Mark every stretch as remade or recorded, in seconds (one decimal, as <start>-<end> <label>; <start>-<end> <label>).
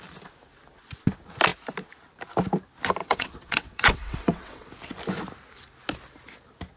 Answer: 0.0-3.0 recorded; 3.0-4.7 remade; 4.7-6.8 recorded